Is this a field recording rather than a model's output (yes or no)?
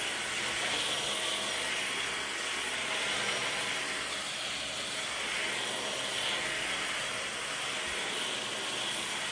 yes